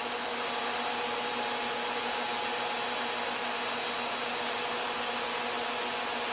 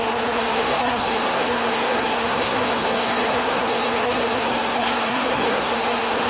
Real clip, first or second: first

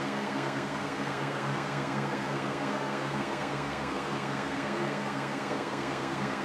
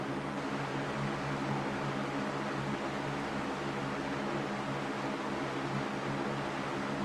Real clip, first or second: second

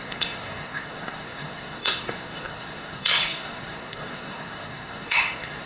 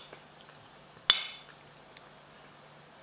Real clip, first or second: second